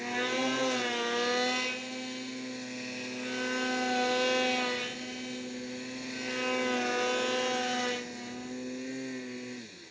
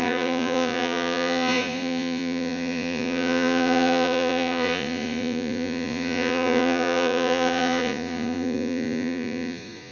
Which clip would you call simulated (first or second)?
second